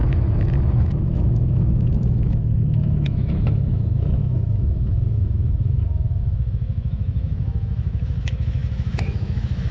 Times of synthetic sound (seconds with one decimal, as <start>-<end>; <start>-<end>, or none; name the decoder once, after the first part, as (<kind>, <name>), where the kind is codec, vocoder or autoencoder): 0.0-9.7 (autoencoder, DAC-VAE)

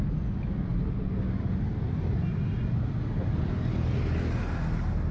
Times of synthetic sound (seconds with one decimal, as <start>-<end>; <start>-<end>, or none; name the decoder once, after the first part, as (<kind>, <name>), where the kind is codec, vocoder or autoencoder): none